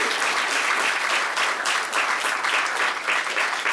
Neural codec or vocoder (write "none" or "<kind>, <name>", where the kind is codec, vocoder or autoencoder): none